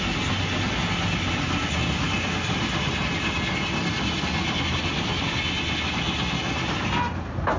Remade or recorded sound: recorded